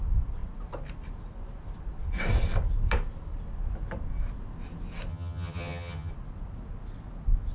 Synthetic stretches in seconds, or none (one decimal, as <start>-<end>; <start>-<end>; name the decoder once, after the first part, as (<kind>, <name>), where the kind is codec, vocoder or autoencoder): 5.1-6.1 (vocoder, HiFi-GAN)